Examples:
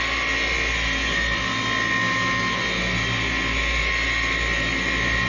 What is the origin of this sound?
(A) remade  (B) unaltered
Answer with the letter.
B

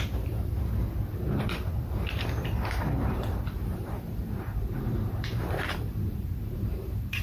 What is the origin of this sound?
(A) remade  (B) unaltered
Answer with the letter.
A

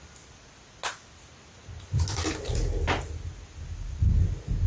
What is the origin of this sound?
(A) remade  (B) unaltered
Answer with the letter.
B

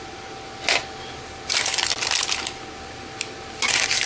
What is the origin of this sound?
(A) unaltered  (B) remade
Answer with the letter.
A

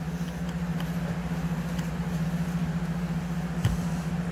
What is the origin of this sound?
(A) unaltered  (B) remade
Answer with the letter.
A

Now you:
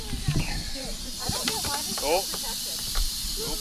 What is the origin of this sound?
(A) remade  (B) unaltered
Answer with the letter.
A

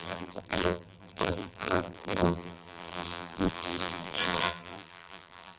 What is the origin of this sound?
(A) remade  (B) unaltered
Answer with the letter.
A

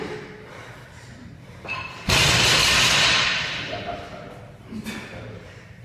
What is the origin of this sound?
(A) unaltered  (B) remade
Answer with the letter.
A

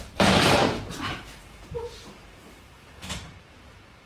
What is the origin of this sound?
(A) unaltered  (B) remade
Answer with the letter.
B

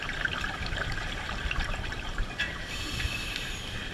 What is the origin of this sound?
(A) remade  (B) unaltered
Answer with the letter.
A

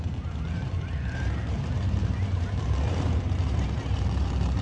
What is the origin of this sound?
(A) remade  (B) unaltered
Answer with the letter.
A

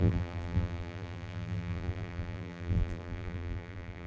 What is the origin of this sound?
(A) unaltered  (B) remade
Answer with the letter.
B